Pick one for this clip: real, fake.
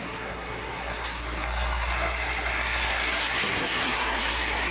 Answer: fake